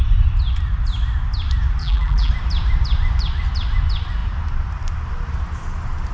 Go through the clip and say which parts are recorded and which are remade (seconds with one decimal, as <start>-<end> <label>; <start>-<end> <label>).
0.0-1.8 recorded; 1.8-2.3 remade; 2.3-6.1 recorded